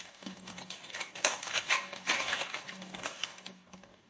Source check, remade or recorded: remade